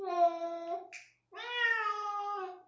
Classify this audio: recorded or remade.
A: recorded